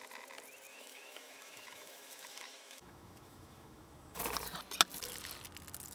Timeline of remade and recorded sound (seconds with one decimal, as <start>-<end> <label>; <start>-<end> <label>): 0.0-0.7 recorded; 0.7-4.2 remade; 4.2-5.9 recorded